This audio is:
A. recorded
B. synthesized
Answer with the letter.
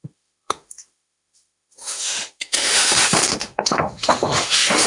B